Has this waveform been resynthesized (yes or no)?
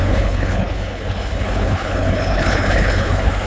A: yes